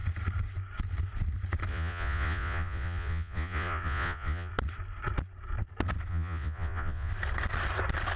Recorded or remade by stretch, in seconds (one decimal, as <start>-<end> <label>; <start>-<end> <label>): 0.0-1.7 recorded; 1.7-4.5 remade; 4.5-6.1 recorded; 6.1-7.1 remade; 7.1-8.2 recorded